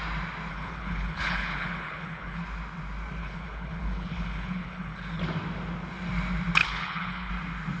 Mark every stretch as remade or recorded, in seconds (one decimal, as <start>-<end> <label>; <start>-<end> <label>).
0.0-0.5 recorded; 0.5-2.4 remade; 2.4-3.2 recorded; 3.2-5.2 remade; 5.2-6.6 recorded; 6.6-7.3 remade; 7.3-7.8 recorded